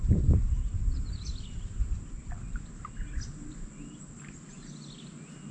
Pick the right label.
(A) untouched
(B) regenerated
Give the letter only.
A